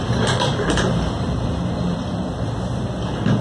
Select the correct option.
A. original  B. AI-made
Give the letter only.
B